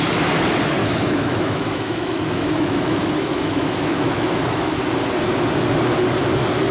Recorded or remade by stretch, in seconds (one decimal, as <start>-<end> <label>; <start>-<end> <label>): 0.0-0.8 recorded; 0.8-4.8 remade; 4.8-6.7 recorded